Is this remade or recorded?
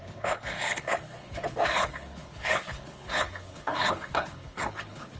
remade